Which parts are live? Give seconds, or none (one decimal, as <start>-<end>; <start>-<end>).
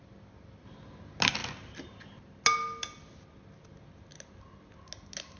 0.0-5.4